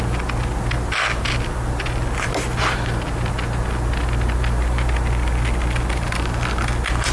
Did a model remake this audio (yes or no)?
no